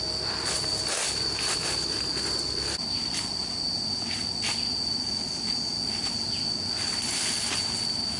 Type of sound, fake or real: real